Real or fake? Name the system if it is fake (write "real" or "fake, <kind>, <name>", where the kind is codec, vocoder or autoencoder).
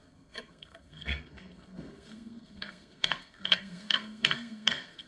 fake, codec, SNAC